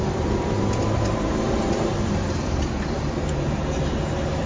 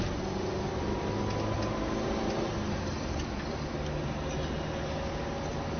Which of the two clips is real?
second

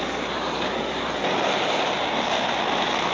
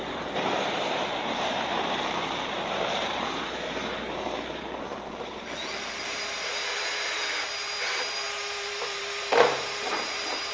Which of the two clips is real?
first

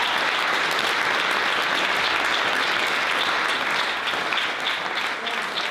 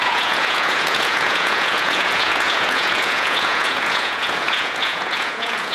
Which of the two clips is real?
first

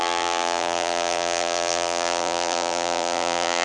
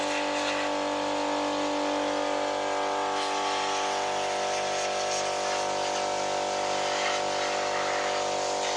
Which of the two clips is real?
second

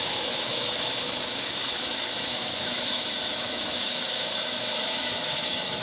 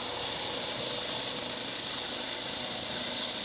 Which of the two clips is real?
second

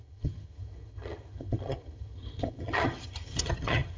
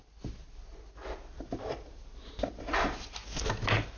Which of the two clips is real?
second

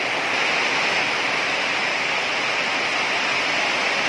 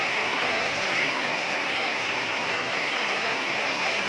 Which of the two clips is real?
first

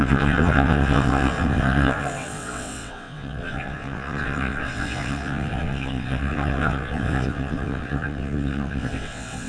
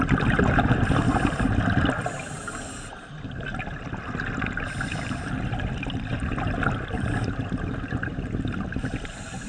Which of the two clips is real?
second